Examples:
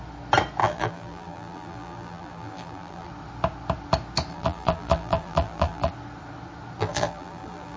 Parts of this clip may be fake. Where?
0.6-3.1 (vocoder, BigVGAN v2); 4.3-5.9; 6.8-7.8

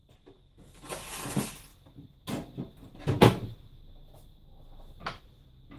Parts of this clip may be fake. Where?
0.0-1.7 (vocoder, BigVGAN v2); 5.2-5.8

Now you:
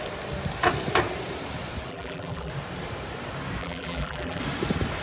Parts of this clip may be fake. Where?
1.9-2.5 (vocoder, BigVGAN v2); 3.6-4.4

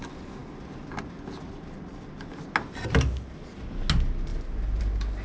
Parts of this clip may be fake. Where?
none

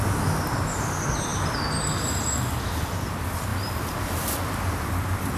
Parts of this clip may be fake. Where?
3.5-4.9 (vocoder, BigVGAN v2)